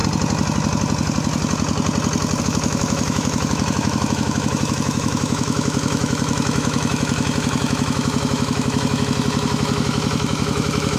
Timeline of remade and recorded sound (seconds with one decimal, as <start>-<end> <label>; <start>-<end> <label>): 0.0-2.4 recorded; 2.4-11.0 remade